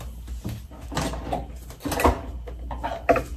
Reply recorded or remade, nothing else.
recorded